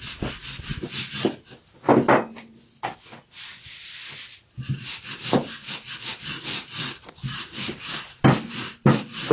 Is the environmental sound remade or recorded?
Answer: recorded